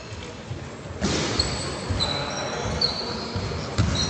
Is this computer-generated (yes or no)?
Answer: no